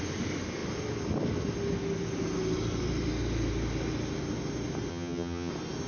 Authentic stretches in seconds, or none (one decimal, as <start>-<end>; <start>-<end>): 0.0-4.9; 5.5-5.9